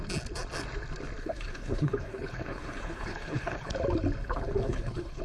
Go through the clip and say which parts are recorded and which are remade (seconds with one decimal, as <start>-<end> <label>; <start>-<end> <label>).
0.0-1.2 recorded; 1.2-3.7 remade; 3.7-4.2 recorded; 4.2-5.2 remade